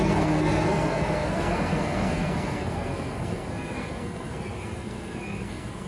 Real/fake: fake